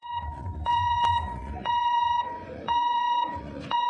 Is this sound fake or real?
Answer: fake